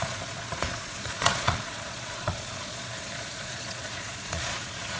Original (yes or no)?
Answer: no